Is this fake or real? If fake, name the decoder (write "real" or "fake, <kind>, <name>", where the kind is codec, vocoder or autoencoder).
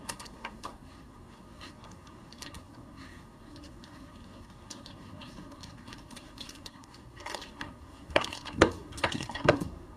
fake, codec, SNAC